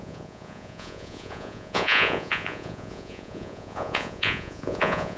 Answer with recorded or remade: remade